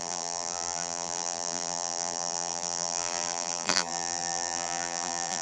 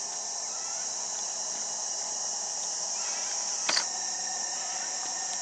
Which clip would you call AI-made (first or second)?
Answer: first